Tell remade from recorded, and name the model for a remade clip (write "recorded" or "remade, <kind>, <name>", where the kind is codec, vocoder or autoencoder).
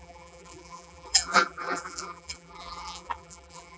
remade, vocoder, BigVGAN v2